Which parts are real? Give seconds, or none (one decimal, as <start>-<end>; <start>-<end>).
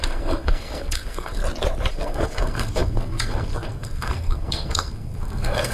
1.4-1.9